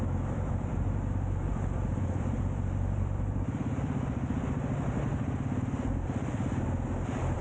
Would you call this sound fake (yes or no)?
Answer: yes